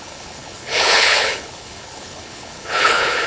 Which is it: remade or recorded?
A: remade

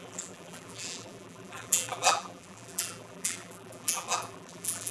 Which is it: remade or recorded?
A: remade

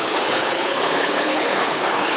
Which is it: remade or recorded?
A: remade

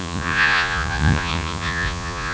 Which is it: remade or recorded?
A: remade